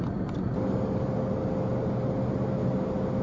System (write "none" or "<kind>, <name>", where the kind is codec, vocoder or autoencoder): none